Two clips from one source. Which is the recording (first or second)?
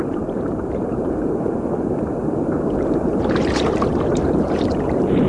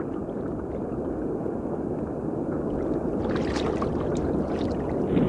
second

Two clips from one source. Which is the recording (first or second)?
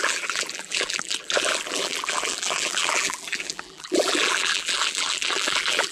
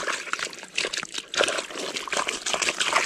second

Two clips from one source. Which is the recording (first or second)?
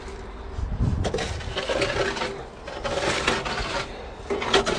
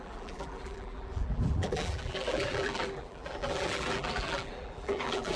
first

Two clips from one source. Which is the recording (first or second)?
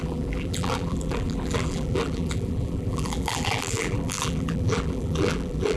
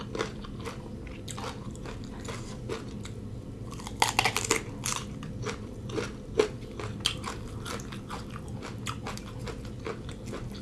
second